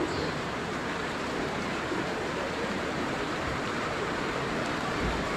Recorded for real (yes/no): no